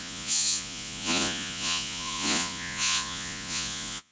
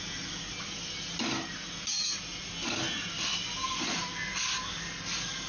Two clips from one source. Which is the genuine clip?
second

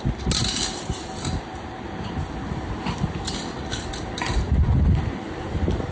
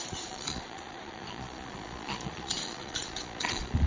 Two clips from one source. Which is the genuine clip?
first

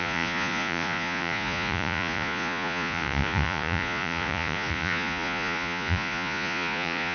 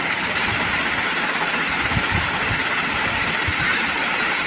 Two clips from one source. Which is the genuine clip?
second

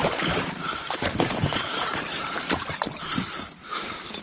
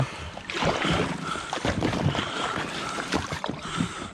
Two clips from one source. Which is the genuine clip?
second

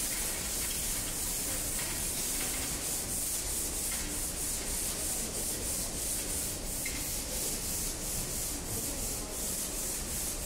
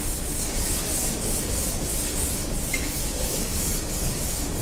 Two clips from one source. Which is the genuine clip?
first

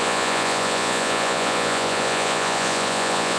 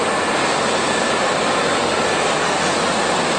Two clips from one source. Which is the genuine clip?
second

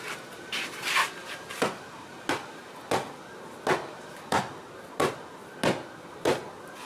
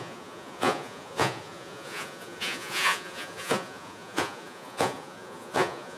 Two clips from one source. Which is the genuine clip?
first